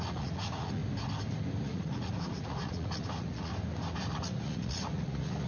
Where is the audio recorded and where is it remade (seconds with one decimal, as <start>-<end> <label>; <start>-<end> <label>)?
0.0-0.8 remade; 0.8-1.6 recorded; 1.6-3.5 remade; 3.5-4.1 recorded; 4.1-5.5 remade